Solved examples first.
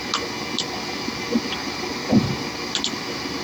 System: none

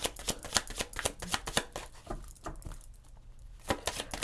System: none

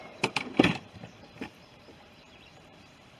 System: vocoder, BigVGAN v2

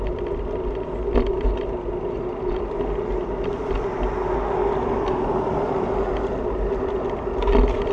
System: none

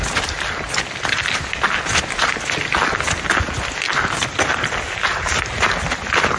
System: none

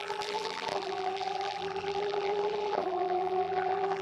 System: vocoder, BigVGAN v2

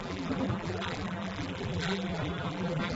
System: vocoder, BigVGAN v2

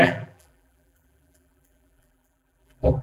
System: vocoder, BigVGAN v2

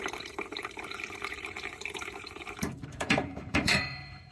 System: vocoder, BigVGAN v2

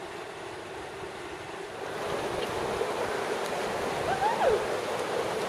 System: none